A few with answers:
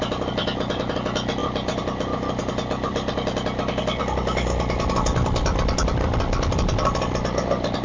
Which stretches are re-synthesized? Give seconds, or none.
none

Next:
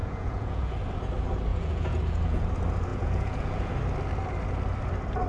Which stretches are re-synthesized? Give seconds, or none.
0.0-0.7 (vocoder, Vocos); 1.5-2.5; 2.9-3.7

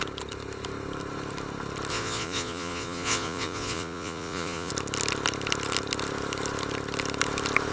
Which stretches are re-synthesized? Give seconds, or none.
1.9-4.7 (vocoder, Vocos)

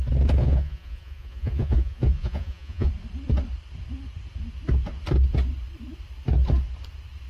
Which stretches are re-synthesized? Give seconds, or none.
0.4-2.9 (vocoder, Vocos)

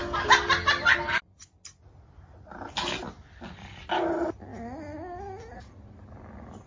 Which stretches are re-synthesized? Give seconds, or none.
none

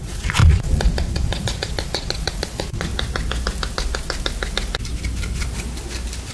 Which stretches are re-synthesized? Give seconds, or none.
0.0-2.9 (vocoder, Vocos)

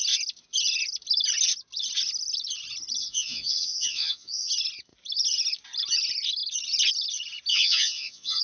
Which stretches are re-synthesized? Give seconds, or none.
3.0-4.5 (vocoder, Vocos); 7.5-8.4